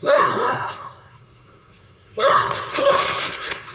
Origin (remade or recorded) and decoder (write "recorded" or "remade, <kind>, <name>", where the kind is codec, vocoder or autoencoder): remade, codec, SNAC